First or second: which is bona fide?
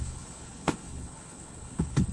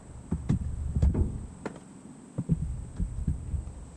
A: second